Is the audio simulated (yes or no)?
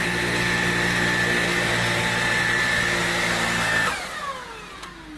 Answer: no